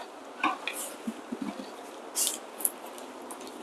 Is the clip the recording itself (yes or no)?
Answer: yes